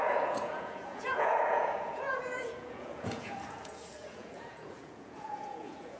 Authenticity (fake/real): fake